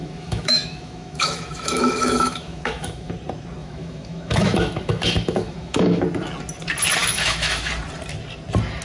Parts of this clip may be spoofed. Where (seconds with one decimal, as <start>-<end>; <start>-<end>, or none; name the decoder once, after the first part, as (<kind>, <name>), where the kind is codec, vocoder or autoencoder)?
0.0-3.1 (autoencoder, DAC-VAE); 3.6-6.0; 7.0-7.7